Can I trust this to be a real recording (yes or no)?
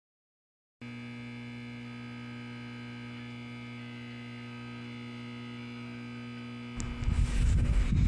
yes